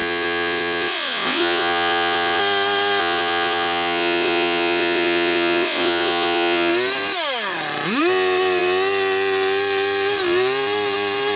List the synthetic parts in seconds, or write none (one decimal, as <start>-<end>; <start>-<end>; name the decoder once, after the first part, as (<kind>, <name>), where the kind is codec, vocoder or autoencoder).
0.0-2.4 (vocoder, WaveNeXt); 3.0-6.7